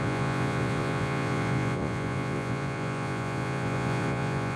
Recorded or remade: remade